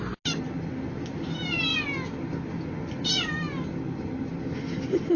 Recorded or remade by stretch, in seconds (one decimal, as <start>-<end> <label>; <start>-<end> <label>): 0.0-5.2 recorded